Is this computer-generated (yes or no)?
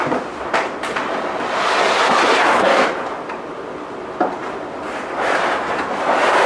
no